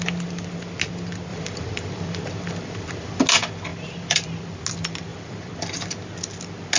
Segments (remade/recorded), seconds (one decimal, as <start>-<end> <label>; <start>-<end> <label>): 0.0-1.3 recorded; 1.3-3.2 remade; 3.2-3.7 recorded; 3.7-4.6 remade; 4.6-5.1 recorded; 5.1-5.9 remade; 5.9-6.8 recorded